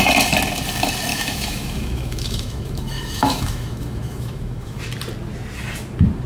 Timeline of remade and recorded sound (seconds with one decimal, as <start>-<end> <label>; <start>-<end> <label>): 0.0-1.1 recorded; 1.1-4.8 remade; 4.8-6.3 recorded